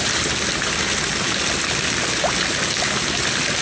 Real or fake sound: real